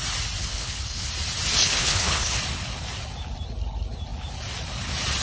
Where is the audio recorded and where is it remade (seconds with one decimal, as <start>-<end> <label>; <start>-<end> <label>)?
0.0-0.4 recorded; 0.4-1.1 remade; 1.1-1.6 recorded; 1.6-2.4 remade; 2.4-5.2 recorded